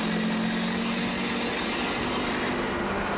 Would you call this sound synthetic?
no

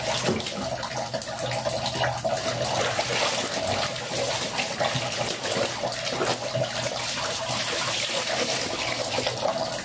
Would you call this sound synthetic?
no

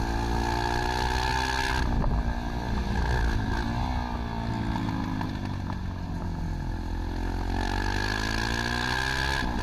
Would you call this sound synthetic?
no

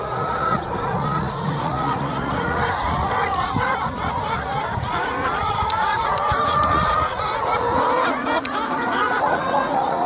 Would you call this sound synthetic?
yes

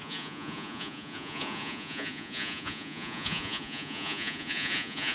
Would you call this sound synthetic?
yes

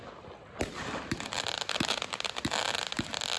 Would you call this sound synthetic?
no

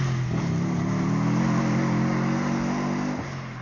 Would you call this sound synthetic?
no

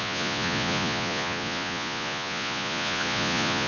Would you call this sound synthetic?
yes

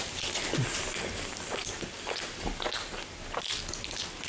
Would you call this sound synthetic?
no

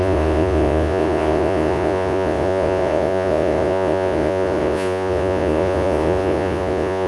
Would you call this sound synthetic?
yes